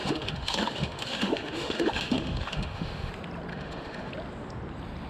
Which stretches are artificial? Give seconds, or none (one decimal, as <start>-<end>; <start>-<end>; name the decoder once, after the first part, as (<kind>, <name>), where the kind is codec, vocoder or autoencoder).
0.0-3.1 (autoencoder, DAC-VAE); 3.5-4.1